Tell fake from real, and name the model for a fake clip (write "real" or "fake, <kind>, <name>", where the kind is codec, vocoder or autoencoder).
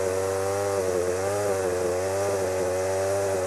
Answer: real